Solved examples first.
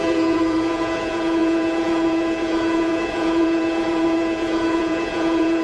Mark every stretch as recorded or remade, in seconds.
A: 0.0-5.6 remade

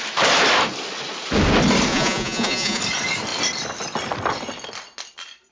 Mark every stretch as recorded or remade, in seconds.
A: 0.0-1.9 recorded; 1.9-2.8 remade; 2.8-5.5 recorded